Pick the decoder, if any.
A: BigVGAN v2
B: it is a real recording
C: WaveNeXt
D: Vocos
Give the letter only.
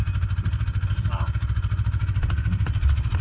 B